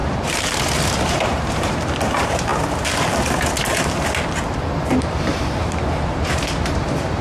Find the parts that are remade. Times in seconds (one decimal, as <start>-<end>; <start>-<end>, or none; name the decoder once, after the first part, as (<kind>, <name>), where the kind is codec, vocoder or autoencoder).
0.0-2.5 (vocoder, BigVGAN v2); 4.9-7.2